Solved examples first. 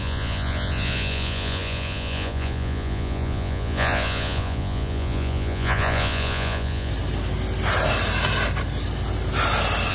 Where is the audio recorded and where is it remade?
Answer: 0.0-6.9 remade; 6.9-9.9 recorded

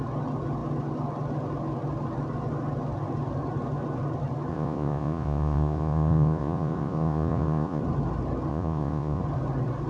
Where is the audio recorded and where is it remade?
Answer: 0.0-4.5 recorded; 4.5-7.8 remade; 7.8-8.5 recorded; 8.5-9.2 remade; 9.2-9.9 recorded